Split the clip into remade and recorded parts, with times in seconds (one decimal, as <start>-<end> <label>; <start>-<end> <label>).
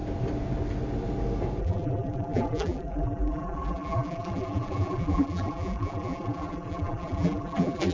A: 0.0-1.6 recorded; 1.6-7.9 remade